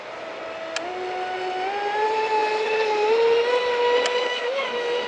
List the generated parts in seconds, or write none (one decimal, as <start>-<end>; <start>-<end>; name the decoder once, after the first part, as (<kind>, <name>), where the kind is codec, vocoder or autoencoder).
4.2-5.1 (autoencoder, DAC-VAE)